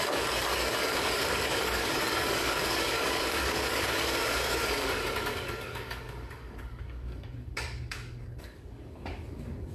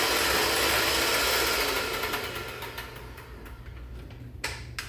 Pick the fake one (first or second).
first